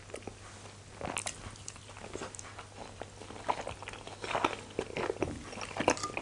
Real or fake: real